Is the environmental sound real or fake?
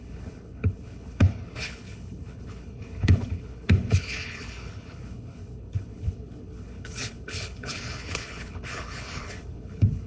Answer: fake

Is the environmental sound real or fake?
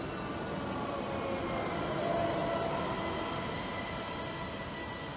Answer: real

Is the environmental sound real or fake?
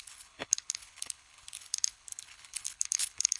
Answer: fake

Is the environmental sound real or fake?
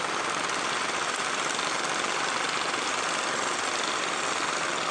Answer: real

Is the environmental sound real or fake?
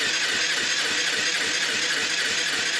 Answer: real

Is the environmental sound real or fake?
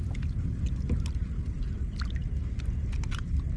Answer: real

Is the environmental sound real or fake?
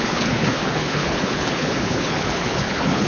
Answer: fake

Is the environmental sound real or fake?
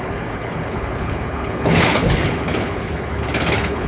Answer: fake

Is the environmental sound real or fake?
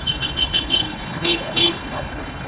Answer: fake